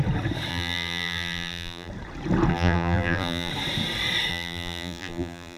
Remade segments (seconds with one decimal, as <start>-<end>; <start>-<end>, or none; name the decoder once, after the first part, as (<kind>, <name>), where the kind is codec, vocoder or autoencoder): 0.5-1.9 (vocoder, BigVGAN v2); 2.5-3.5; 4.3-5.6